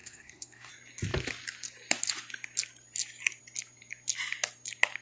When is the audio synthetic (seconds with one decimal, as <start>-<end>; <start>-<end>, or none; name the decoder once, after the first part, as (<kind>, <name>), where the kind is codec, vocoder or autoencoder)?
0.0-0.7 (codec, SNAC)